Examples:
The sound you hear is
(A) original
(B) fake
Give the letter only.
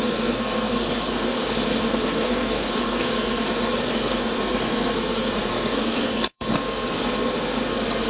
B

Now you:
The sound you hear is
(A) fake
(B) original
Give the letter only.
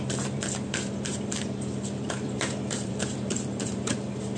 A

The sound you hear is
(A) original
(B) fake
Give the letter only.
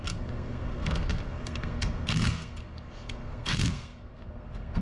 B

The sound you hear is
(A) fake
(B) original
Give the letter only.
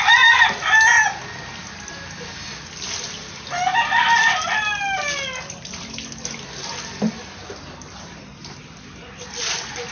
B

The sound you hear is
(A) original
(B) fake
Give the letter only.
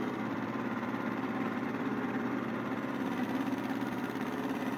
B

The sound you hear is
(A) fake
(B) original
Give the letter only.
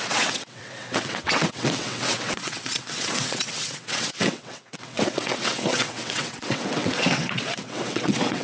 A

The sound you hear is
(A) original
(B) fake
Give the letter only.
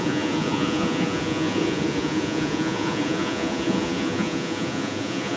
B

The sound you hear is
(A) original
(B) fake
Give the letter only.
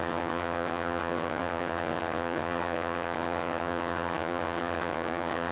B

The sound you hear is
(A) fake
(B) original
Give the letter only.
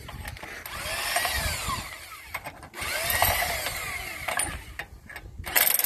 B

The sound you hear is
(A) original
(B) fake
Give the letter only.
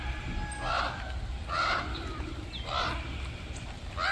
A